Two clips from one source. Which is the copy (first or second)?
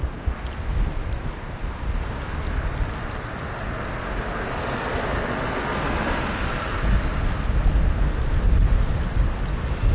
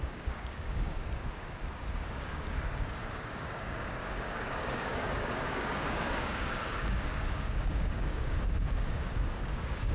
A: second